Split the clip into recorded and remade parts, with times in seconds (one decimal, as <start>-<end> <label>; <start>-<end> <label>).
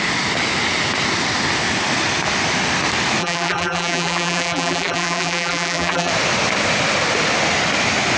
0.0-3.2 recorded; 3.2-6.1 remade; 6.1-8.2 recorded